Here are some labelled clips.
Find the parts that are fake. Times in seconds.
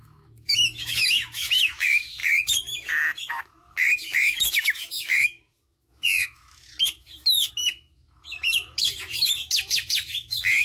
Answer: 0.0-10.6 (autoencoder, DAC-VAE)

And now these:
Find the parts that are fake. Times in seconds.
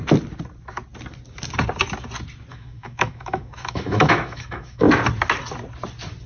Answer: 2.5-4.9 (autoencoder, DAC-VAE)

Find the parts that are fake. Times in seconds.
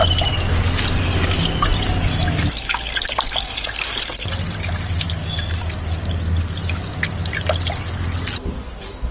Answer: none